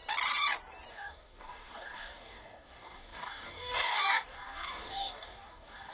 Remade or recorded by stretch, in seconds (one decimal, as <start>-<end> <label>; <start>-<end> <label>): 0.0-0.9 recorded; 0.9-5.9 remade

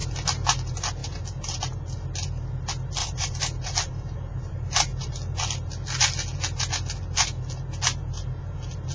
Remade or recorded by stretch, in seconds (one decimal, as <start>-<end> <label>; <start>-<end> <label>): 0.0-1.0 recorded; 1.0-1.6 remade; 1.6-3.0 recorded; 3.0-5.1 remade; 5.1-8.9 recorded